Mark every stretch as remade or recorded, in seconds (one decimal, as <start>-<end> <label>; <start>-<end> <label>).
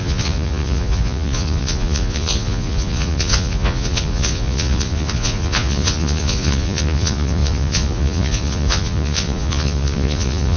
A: 0.0-10.6 remade